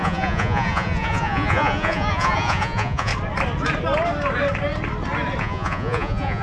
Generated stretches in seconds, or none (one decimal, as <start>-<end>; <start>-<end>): 0.0-3.1; 5.4-6.4